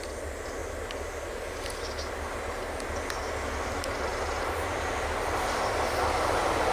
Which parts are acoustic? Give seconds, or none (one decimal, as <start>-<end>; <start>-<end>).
0.0-4.1; 4.9-6.7